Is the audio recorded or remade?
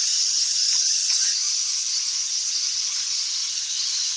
recorded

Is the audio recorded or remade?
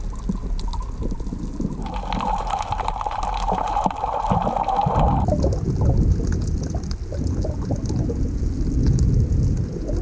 recorded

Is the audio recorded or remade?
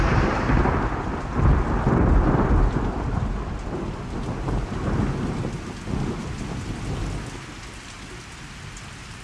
recorded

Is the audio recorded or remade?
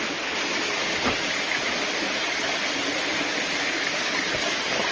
recorded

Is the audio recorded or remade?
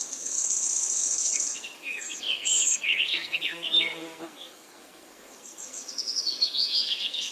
remade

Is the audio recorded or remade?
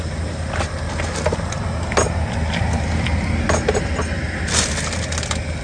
recorded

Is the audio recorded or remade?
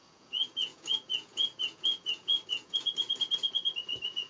remade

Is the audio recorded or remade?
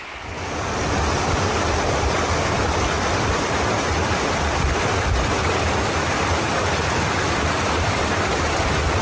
recorded